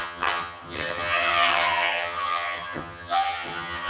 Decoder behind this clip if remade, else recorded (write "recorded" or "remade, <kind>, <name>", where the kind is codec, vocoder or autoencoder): remade, vocoder, HiFi-GAN